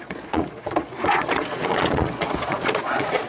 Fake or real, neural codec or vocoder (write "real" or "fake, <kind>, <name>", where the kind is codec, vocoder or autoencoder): fake, vocoder, Vocos